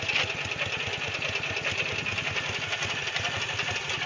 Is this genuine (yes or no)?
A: yes